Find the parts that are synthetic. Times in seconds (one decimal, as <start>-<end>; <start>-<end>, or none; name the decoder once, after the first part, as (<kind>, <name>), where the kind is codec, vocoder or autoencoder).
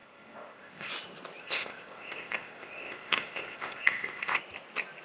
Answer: 0.0-0.9 (codec, ZipCodec); 1.4-4.4